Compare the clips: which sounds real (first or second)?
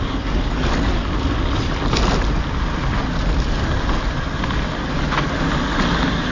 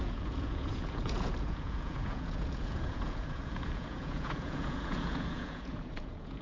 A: first